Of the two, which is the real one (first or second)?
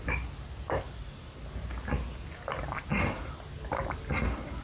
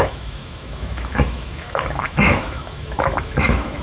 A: first